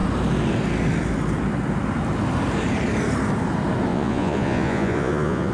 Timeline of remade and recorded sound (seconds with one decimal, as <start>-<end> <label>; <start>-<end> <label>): 0.0-3.9 recorded; 3.9-5.5 remade

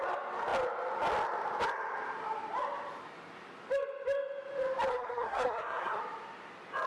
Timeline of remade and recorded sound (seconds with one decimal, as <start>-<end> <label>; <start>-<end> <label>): 0.0-4.9 recorded; 4.9-6.0 remade; 6.0-6.9 recorded